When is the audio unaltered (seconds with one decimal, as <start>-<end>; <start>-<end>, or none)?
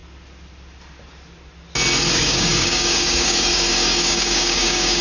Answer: 0.0-2.1